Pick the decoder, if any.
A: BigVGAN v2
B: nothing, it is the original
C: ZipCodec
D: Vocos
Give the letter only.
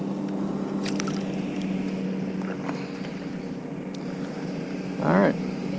B